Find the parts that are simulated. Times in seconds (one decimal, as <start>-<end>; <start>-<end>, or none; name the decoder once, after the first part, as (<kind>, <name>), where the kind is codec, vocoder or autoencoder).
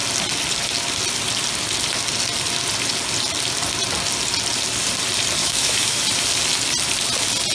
5.4-6.0 (autoencoder, DAC-VAE)